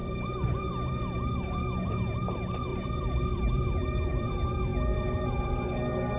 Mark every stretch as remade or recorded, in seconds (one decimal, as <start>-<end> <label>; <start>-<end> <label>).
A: 0.0-1.9 remade; 1.9-2.7 recorded; 2.7-4.3 remade; 4.3-6.2 recorded